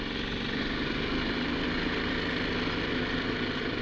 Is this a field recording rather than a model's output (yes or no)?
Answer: yes